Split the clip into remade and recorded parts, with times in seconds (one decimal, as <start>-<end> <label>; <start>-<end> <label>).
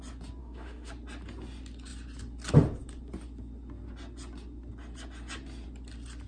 0.0-0.4 recorded; 0.4-0.9 remade; 0.9-6.3 recorded